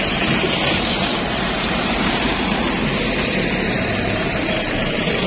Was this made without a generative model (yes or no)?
no